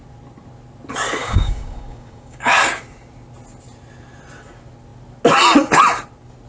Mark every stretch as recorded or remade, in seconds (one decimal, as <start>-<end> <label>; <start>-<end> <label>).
0.0-1.2 recorded; 1.2-2.5 remade; 2.5-6.5 recorded